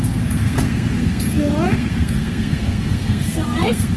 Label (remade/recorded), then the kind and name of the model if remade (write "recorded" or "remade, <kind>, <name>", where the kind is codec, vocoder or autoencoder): remade, codec, SNAC